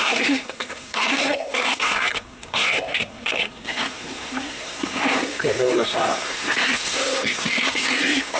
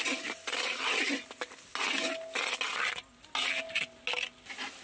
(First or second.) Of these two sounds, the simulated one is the first